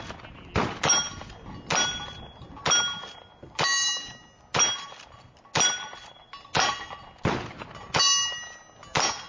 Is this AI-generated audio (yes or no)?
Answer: no